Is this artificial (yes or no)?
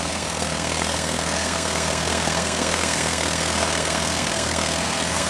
yes